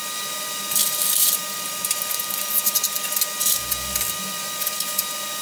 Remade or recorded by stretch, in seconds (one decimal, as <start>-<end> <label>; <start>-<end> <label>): 0.0-5.4 recorded